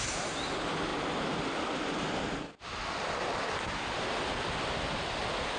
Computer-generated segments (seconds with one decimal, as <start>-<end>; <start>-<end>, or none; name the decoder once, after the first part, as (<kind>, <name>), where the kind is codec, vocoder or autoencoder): none